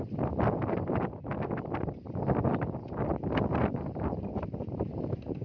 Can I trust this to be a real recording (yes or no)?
yes